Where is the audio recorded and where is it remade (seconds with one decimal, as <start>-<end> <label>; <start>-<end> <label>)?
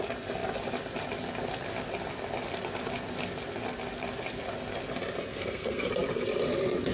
0.0-5.3 recorded; 5.3-5.9 remade; 5.9-6.9 recorded